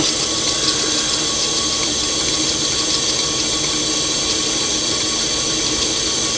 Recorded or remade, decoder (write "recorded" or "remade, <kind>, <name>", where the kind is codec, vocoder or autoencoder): recorded